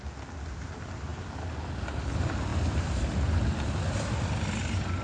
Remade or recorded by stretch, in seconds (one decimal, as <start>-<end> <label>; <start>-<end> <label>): 0.0-5.0 recorded